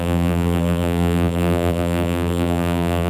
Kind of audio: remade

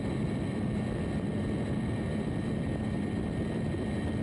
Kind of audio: remade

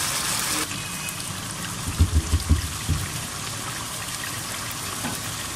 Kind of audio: recorded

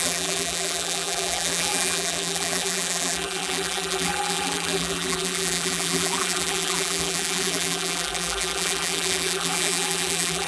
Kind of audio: remade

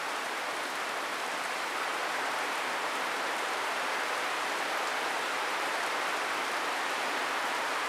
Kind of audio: remade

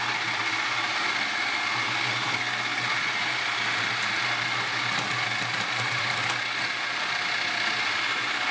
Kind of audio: recorded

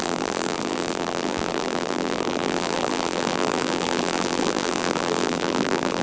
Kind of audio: remade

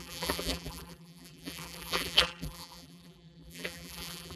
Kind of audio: remade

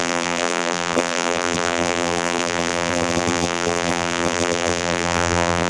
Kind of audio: remade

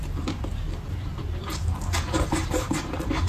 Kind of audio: remade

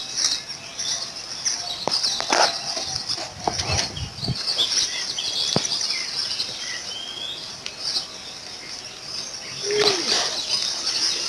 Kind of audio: recorded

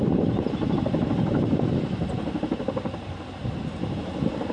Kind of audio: remade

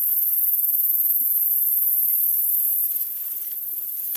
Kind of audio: recorded